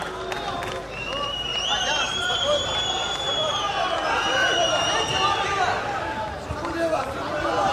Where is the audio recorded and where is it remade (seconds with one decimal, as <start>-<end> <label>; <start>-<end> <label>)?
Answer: 0.0-1.5 recorded; 1.5-4.8 remade; 4.8-7.7 recorded